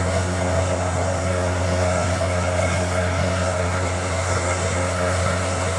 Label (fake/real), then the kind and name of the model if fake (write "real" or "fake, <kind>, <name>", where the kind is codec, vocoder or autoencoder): fake, codec, SNAC